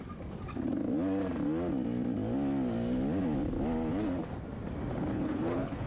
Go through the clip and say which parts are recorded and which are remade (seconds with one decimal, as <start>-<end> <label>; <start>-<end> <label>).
0.0-5.1 recorded; 5.1-5.9 remade